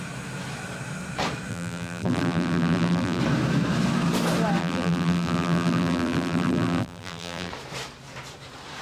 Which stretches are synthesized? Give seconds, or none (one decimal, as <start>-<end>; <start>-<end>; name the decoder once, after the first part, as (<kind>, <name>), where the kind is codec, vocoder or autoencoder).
1.5-3.2 (vocoder, BigVGAN v2); 4.6-7.5